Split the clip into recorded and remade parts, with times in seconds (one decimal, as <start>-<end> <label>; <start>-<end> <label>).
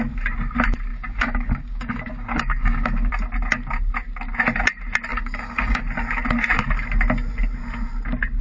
0.0-0.9 recorded; 0.9-3.1 remade; 3.1-5.1 recorded; 5.1-5.8 remade; 5.8-8.4 recorded